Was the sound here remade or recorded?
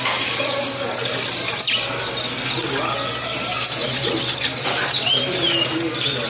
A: recorded